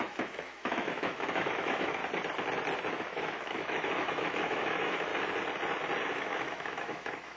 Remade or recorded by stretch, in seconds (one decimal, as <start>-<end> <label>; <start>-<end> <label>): 0.0-2.0 remade; 2.0-2.9 recorded; 2.9-5.1 remade; 5.1-6.1 recorded; 6.1-7.4 remade

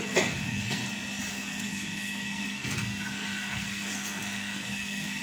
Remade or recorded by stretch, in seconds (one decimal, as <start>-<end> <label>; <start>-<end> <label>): 0.0-0.8 remade; 0.8-1.3 recorded; 1.3-5.2 remade

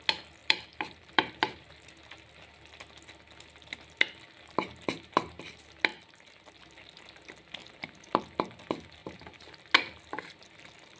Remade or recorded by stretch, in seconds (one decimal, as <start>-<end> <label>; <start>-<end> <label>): 0.0-0.4 recorded; 0.4-1.9 remade; 1.9-7.6 recorded; 7.6-8.2 remade; 8.2-9.0 recorded; 9.0-9.6 remade; 9.6-11.0 recorded

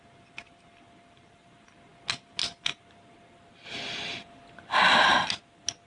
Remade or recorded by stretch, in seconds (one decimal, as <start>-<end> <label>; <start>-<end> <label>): 0.0-5.9 recorded